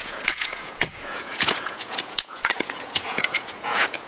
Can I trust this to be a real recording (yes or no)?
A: no